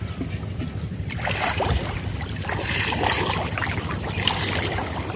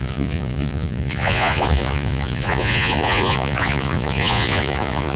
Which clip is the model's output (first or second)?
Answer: second